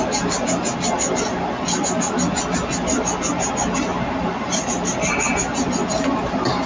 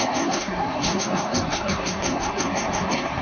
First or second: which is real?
first